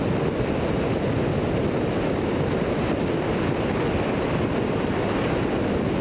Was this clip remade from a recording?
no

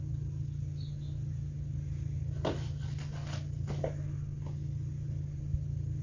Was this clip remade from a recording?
no